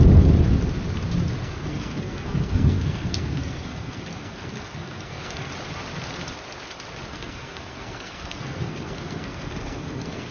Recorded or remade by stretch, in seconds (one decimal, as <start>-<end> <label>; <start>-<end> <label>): 0.0-1.4 recorded; 1.4-5.5 remade; 5.5-7.1 recorded; 7.1-10.3 remade